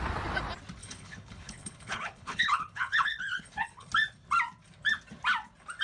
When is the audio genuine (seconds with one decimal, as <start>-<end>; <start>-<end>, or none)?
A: 0.0-0.8; 3.9-5.8